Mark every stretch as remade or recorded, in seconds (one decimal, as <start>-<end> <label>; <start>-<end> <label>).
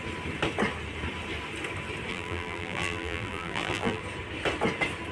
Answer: 0.0-2.1 recorded; 2.1-4.0 remade; 4.0-5.1 recorded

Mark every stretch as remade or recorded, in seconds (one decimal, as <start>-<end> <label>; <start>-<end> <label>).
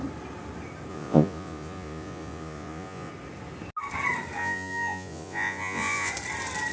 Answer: 0.0-0.9 recorded; 0.9-3.1 remade; 3.1-4.4 recorded; 4.4-6.1 remade; 6.1-6.7 recorded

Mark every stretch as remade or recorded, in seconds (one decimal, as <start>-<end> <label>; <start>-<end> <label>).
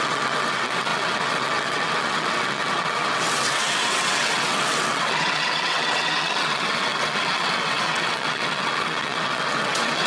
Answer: 0.0-10.1 remade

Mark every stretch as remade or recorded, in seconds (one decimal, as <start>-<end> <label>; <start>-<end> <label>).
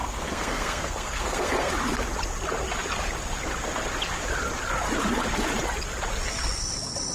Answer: 0.0-1.7 remade; 1.7-7.1 recorded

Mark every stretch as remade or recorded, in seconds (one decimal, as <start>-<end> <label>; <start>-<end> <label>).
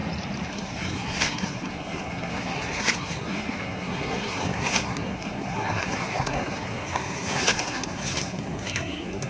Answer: 0.0-0.5 recorded; 0.5-9.3 remade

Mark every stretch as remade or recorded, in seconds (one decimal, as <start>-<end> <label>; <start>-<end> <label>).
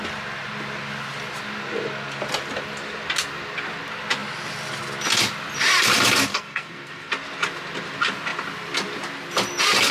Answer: 0.0-6.3 recorded; 6.3-7.1 remade; 7.1-9.9 recorded